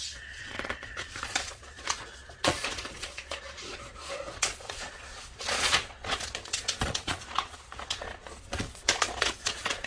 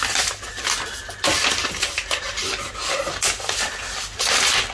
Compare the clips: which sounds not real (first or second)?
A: first